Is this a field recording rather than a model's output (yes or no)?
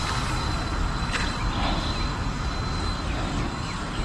no